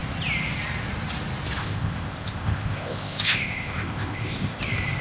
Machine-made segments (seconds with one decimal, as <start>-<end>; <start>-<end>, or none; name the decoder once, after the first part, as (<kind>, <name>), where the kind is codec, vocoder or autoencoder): 1.6-4.6 (codec, ZipCodec)